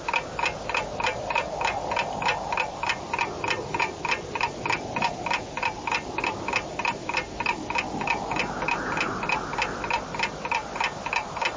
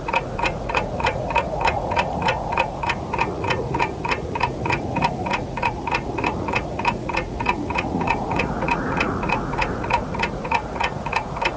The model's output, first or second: second